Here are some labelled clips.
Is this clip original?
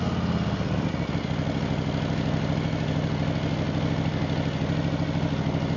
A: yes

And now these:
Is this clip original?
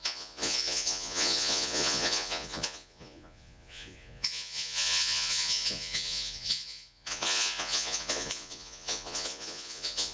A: no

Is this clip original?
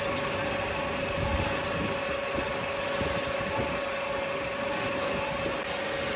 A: yes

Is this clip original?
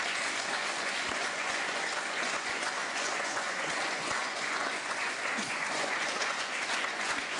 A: no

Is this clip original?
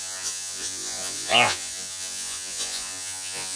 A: no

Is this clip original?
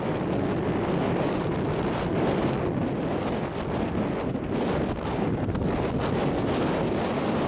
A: yes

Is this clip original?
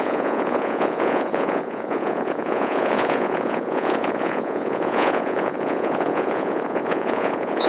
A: no